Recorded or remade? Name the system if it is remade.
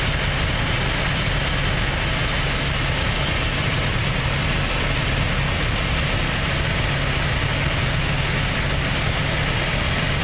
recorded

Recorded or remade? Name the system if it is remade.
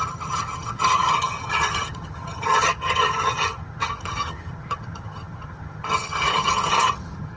remade, vocoder, HiFi-GAN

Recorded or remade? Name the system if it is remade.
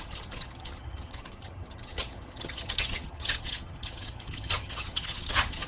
remade, vocoder, HiFi-GAN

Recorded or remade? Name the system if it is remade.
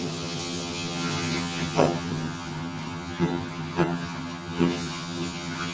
remade, vocoder, HiFi-GAN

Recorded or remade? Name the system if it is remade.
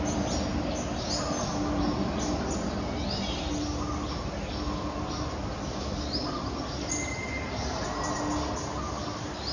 recorded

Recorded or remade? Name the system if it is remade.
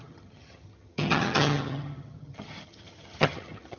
remade, vocoder, HiFi-GAN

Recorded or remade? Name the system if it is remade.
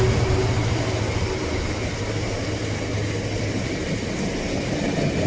recorded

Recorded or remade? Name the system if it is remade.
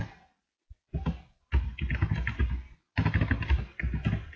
recorded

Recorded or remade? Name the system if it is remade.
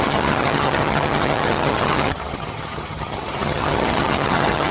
remade, vocoder, HiFi-GAN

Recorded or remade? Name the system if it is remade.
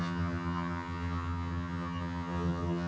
remade, vocoder, HiFi-GAN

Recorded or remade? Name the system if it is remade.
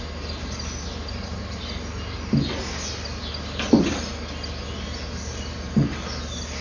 recorded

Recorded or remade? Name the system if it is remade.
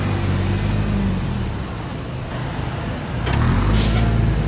recorded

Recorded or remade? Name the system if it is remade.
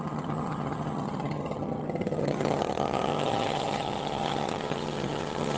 remade, vocoder, HiFi-GAN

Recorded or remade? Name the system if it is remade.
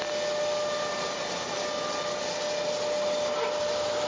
recorded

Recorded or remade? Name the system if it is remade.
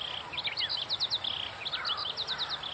recorded